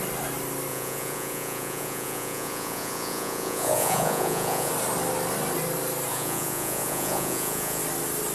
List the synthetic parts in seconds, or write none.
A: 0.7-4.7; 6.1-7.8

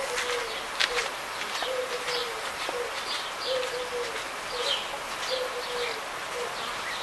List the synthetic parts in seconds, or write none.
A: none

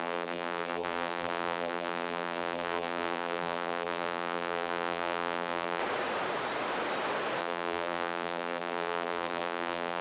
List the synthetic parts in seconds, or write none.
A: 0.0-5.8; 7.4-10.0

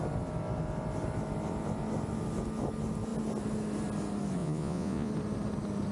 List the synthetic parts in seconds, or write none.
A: 4.4-5.1

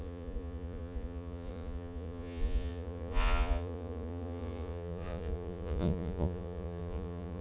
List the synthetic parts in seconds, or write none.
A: 0.0-7.4

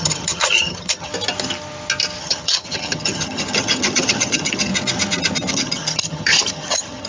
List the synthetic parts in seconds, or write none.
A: 0.0-1.1; 2.2-4.7; 5.5-7.1

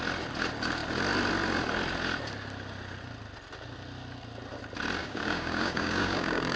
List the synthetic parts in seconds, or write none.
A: 5.0-6.6

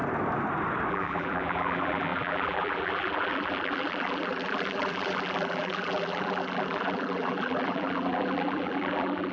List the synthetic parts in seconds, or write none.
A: 0.9-9.3